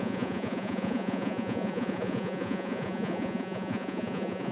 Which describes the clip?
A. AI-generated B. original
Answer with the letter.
A